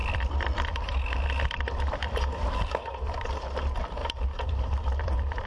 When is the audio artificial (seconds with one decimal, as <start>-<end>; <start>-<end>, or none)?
0.0-3.3; 4.0-5.5